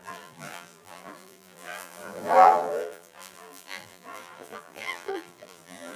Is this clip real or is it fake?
fake